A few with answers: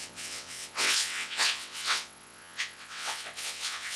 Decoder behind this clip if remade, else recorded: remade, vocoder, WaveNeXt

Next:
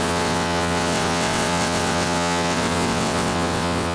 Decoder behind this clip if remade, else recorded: remade, vocoder, WaveNeXt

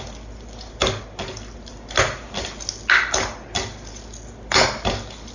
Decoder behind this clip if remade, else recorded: recorded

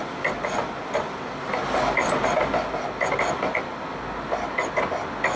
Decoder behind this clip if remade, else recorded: recorded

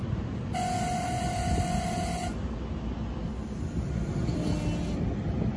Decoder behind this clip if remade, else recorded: recorded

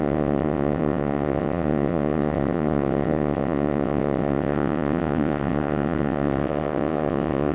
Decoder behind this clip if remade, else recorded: remade, vocoder, WaveNeXt